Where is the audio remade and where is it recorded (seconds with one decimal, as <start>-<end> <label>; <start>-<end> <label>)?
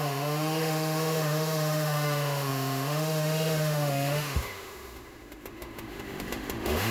0.0-6.9 remade